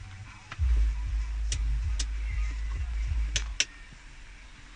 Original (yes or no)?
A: yes